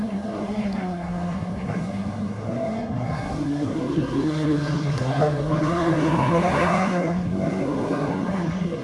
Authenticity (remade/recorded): remade